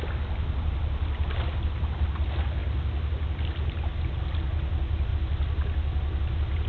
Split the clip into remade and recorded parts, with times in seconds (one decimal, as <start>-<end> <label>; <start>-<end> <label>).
0.0-6.7 recorded